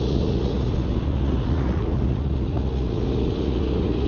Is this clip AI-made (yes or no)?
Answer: yes